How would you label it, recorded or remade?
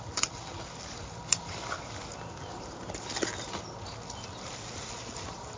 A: recorded